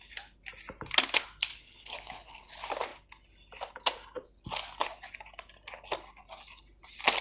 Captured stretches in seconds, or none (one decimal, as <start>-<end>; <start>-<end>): 0.0-1.5; 2.5-7.2